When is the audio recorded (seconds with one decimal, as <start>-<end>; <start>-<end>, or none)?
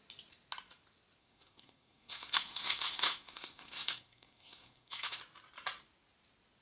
0.0-1.2; 5.2-6.6